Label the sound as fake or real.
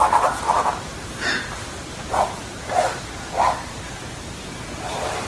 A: real